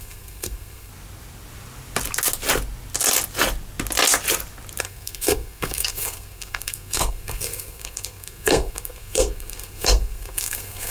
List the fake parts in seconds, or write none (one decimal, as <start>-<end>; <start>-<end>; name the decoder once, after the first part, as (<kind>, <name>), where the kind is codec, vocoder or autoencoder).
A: 0.0-0.9 (codec, SNAC); 4.8-10.9